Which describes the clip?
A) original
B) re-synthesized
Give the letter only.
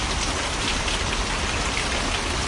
A